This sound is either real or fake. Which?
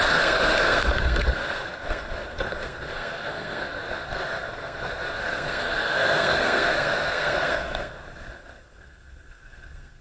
fake